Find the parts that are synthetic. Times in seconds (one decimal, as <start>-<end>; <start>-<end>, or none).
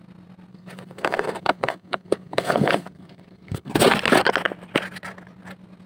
0.5-3.7